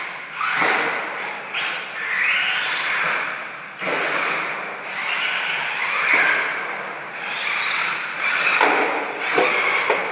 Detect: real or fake real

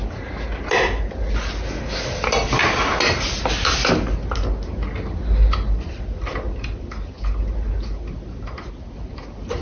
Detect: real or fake real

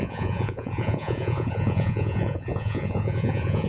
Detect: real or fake fake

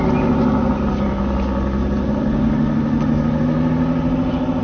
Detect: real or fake real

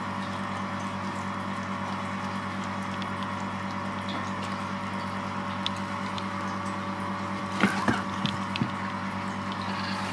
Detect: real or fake real